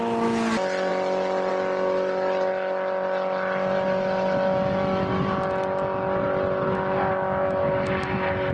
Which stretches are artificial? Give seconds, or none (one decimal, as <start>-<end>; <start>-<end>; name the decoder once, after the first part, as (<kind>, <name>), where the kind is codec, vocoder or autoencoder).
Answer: none